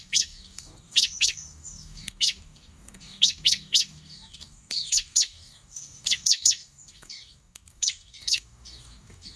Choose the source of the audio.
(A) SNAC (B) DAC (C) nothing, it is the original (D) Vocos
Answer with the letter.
B